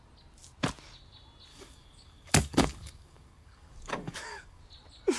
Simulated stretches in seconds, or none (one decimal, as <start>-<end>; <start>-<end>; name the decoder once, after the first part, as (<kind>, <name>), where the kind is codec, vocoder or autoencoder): 1.5-4.6 (codec, DAC)